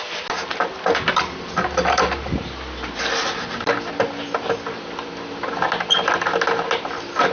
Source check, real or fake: real